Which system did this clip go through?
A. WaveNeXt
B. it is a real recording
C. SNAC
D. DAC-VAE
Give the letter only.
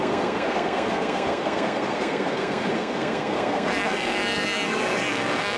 C